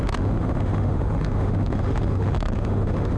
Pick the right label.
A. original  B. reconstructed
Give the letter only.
B